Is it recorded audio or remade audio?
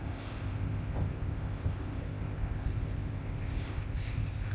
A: remade